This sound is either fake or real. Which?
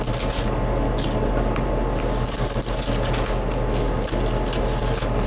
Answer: real